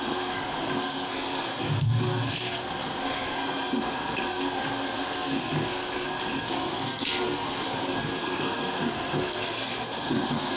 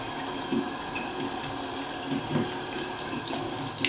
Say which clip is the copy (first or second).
first